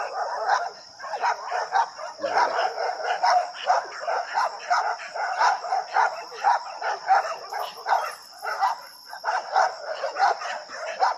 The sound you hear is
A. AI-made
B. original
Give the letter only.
B